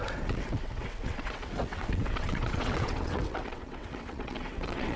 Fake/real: fake